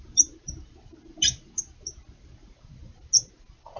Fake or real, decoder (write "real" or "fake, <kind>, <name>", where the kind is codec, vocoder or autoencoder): real